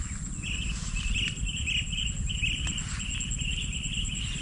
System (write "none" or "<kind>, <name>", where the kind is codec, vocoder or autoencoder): none